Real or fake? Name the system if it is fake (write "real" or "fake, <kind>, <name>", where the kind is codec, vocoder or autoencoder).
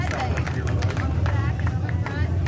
fake, vocoder, BigVGAN v2